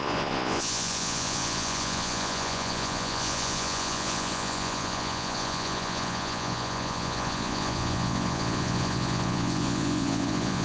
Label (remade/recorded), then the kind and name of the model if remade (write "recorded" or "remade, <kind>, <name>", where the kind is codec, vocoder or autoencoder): remade, vocoder, Vocos